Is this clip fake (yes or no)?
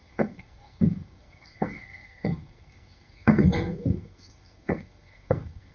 yes